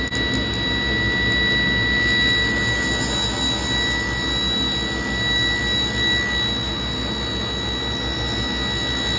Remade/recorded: recorded